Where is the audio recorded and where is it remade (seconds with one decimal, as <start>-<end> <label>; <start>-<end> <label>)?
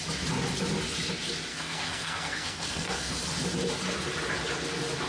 0.0-1.5 recorded; 1.5-3.1 remade; 3.1-5.1 recorded